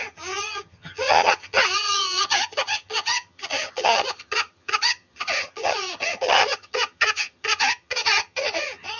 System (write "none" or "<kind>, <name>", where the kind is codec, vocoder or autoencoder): vocoder, HiFi-GAN